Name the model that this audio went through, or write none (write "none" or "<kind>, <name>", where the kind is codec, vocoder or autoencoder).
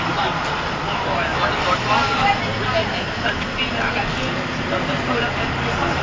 none